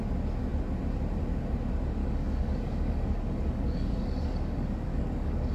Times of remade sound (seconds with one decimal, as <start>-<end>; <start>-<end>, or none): 2.0-5.5